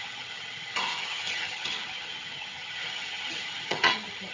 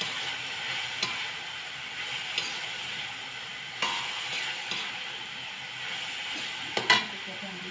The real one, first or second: second